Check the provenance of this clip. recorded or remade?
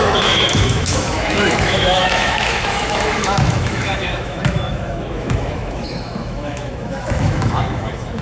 remade